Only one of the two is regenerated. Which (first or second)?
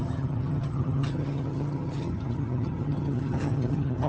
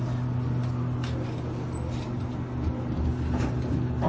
first